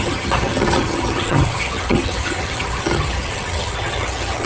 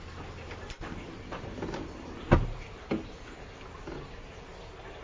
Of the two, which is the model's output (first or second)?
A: first